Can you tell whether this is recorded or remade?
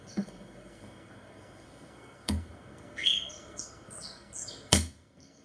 remade